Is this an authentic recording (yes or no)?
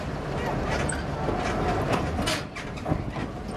yes